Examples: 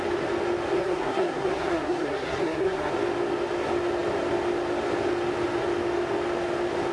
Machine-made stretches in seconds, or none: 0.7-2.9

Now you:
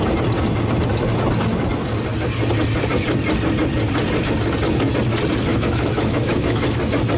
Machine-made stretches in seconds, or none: 5.5-6.8

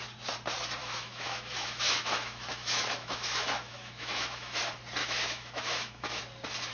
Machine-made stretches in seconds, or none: 0.8-4.6; 5.0-6.2

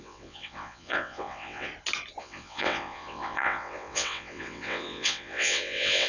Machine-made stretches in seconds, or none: 0.0-1.7; 2.2-6.1

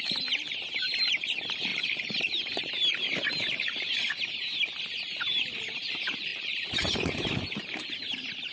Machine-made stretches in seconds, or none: 0.0-8.5

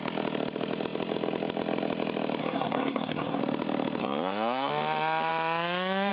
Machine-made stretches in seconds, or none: 2.4-3.4; 4.0-4.7

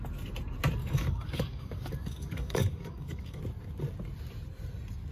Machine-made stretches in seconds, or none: 0.8-3.4